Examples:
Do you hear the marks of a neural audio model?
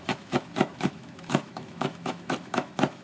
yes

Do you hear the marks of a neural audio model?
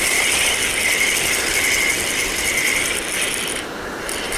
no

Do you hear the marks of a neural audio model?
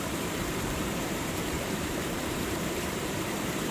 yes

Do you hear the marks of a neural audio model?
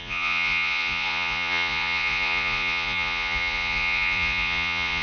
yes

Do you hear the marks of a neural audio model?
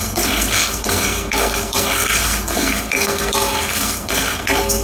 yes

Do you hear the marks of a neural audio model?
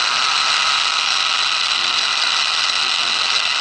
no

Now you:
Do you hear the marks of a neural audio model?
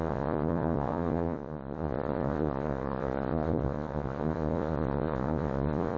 yes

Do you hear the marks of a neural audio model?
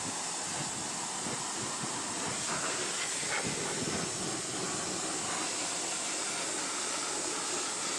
no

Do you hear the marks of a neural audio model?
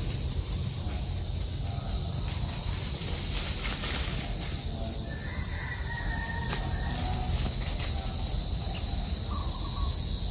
no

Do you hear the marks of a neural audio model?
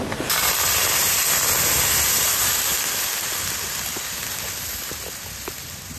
no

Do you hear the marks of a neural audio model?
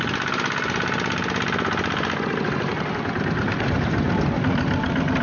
no